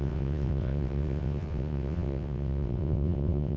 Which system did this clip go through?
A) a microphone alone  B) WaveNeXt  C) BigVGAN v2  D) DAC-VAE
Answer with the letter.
B